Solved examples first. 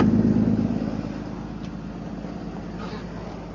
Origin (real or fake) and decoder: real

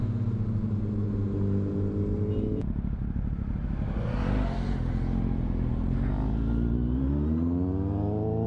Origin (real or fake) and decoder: real